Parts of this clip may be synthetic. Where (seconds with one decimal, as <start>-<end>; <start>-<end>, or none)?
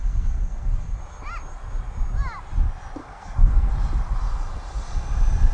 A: 0.0-1.0; 3.0-3.7